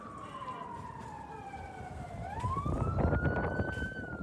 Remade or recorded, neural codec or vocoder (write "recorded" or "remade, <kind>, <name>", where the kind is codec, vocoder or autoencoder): remade, vocoder, BigVGAN v2